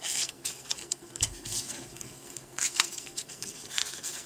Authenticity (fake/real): fake